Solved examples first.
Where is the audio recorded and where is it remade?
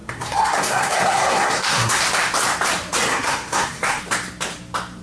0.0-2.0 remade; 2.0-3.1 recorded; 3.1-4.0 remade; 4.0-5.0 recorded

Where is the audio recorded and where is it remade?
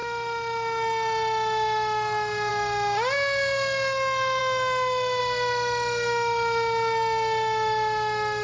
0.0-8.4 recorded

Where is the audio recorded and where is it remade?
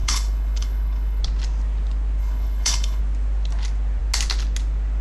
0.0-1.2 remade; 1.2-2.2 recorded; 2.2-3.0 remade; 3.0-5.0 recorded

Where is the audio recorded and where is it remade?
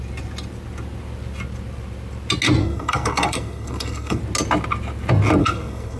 0.0-2.6 recorded; 2.6-4.2 remade; 4.2-5.4 recorded; 5.4-6.0 remade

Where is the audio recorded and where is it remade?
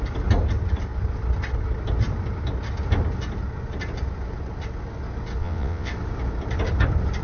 0.0-5.4 recorded; 5.4-5.9 remade; 5.9-7.2 recorded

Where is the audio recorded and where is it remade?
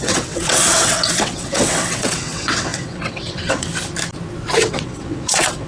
0.0-3.7 remade; 3.7-4.6 recorded; 4.6-5.7 remade